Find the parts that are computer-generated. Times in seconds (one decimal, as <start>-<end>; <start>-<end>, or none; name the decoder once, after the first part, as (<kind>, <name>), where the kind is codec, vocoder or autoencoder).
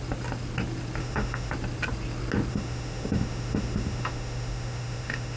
1.0-1.5 (autoencoder, DAC-VAE); 2.5-5.4